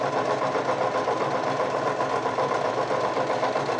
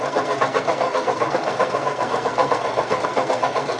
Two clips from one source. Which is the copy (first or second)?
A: second